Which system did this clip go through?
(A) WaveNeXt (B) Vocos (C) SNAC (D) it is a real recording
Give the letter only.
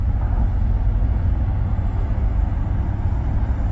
D